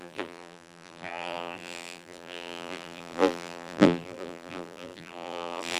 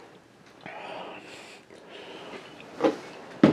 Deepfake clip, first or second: first